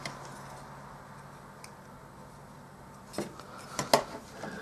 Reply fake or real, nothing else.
real